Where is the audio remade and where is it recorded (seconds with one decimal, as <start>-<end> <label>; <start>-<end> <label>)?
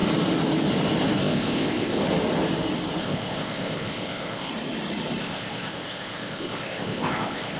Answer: 0.0-1.2 recorded; 1.2-2.0 remade; 2.0-3.0 recorded; 3.0-4.5 remade; 4.5-5.2 recorded; 5.2-7.6 remade